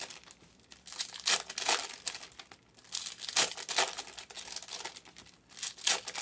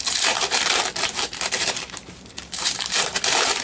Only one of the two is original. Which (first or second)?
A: first